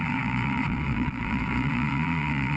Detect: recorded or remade remade